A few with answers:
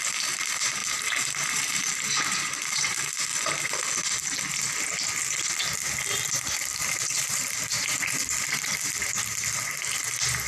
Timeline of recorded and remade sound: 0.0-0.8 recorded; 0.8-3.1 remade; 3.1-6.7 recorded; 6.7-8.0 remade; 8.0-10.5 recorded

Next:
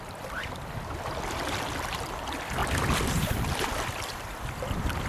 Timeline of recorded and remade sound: 0.0-2.6 remade; 2.6-3.3 recorded; 3.3-5.1 remade

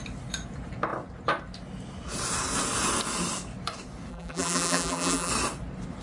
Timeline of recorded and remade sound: 0.0-4.1 recorded; 4.1-5.3 remade; 5.3-6.0 recorded

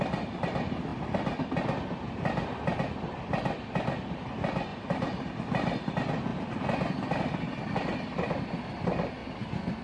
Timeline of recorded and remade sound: 0.0-4.7 recorded; 4.7-5.3 remade; 5.3-9.8 recorded

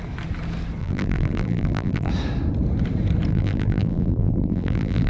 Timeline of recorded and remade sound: 0.0-0.8 recorded; 0.8-2.1 remade; 2.1-3.3 recorded; 3.3-5.1 remade